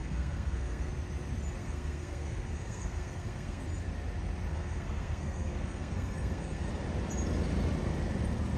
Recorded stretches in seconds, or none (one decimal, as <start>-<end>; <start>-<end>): 0.9-1.6; 3.6-4.5; 6.7-8.6